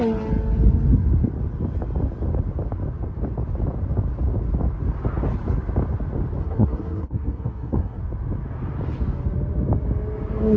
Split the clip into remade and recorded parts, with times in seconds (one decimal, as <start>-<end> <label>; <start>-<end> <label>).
0.0-6.4 recorded; 6.4-8.0 remade; 8.0-10.6 recorded